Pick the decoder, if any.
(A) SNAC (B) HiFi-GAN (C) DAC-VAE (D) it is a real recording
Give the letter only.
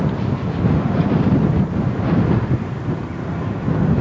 D